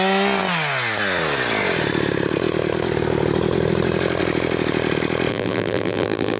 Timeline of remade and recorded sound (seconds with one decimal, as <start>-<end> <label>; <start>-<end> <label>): 0.0-5.3 recorded; 5.3-6.4 remade